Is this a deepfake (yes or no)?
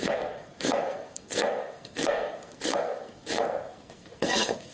yes